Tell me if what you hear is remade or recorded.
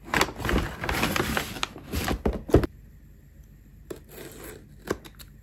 recorded